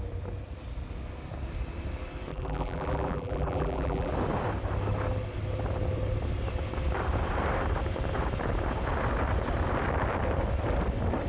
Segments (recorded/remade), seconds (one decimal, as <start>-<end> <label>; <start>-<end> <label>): 0.0-2.3 recorded; 2.3-4.1 remade; 4.1-11.3 recorded